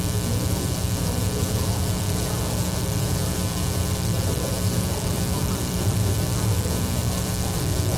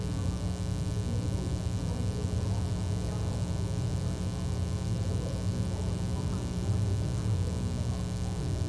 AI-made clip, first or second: first